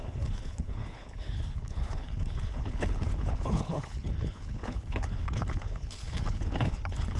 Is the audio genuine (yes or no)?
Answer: no